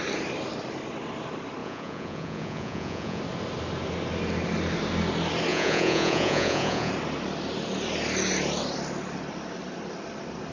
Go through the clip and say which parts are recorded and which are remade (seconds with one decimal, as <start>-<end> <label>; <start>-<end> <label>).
0.0-1.6 recorded; 1.6-3.2 remade; 3.2-5.5 recorded; 5.5-6.9 remade; 6.9-10.5 recorded